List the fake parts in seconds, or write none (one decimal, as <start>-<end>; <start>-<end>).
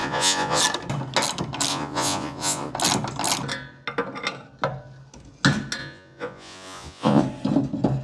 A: 0.0-0.6; 1.7-2.7; 5.8-7.2